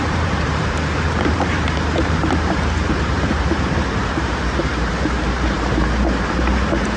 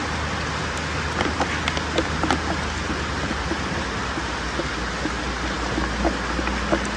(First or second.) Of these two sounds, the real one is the second